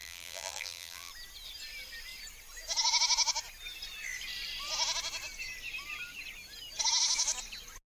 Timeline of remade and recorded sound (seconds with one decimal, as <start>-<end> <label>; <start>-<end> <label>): 0.0-1.1 remade; 1.1-7.9 recorded